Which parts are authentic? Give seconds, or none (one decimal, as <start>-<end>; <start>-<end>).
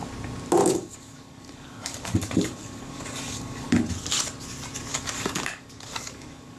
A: 0.0-0.6; 3.9-4.9